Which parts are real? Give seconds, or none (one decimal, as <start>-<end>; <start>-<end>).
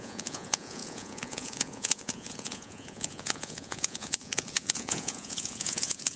none